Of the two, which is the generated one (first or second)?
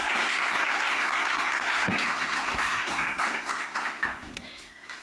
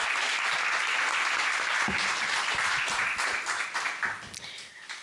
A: first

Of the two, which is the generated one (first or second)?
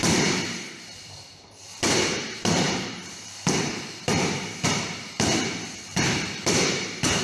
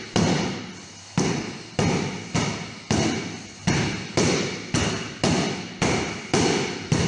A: first